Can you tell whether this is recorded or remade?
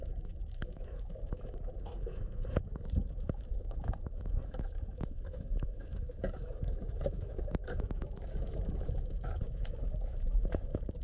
remade